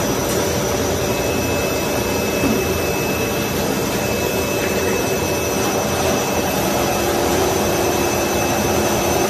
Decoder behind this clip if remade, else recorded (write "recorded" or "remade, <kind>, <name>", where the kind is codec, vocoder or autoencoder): recorded